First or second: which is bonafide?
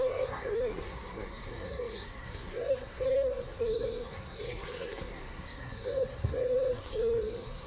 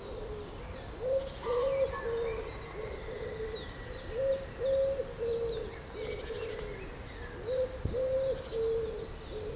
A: second